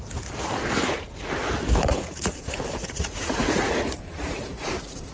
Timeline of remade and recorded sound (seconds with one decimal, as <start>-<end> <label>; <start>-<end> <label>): 0.0-0.4 recorded; 0.4-1.3 remade; 1.3-1.9 recorded; 1.9-5.1 remade